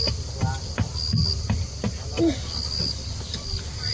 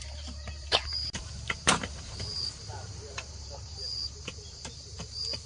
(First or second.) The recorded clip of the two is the first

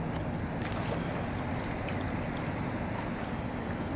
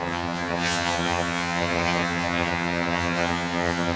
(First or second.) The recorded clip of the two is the first